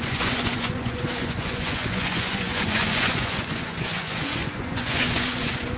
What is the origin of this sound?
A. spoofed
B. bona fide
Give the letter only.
A